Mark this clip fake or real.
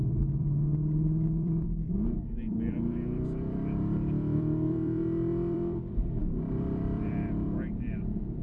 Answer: fake